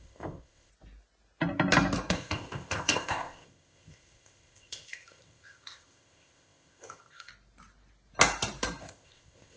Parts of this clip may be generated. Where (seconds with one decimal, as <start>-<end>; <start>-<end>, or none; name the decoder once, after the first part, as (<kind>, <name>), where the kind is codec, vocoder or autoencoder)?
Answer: 0.0-0.7 (codec, ZipCodec); 2.1-7.3; 8.8-9.6